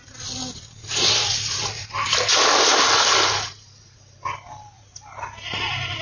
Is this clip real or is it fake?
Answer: real